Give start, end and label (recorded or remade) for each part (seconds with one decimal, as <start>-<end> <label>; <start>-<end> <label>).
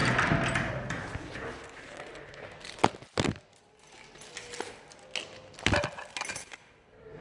0.0-7.2 recorded